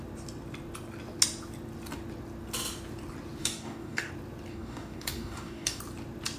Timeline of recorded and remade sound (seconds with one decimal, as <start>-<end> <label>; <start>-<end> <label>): 0.0-3.4 recorded; 3.4-4.1 remade; 4.1-4.5 recorded; 4.5-5.8 remade; 5.8-6.4 recorded

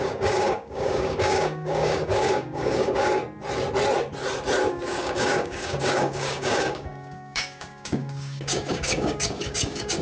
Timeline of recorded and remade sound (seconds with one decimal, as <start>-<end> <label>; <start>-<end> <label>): 0.0-3.2 remade; 3.2-4.7 recorded; 4.7-10.0 remade

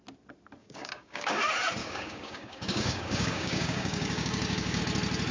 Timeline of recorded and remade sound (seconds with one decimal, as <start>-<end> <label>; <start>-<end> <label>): 0.0-0.6 recorded; 0.6-1.4 remade; 1.4-1.8 recorded; 1.8-4.8 remade; 4.8-5.3 recorded

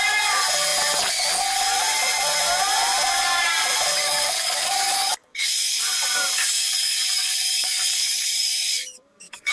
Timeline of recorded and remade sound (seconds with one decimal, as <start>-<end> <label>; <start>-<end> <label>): 0.0-4.0 recorded; 4.0-5.8 remade; 5.8-6.6 recorded; 6.6-9.5 remade

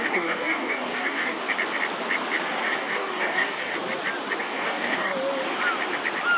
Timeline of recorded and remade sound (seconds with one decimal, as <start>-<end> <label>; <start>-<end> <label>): 0.0-1.4 remade; 1.4-2.8 recorded; 2.8-3.7 remade; 3.7-4.4 recorded; 4.4-5.1 remade; 5.1-6.4 recorded